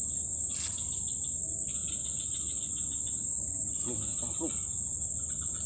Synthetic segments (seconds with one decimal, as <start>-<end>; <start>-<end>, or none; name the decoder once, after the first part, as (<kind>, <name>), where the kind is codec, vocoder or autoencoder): none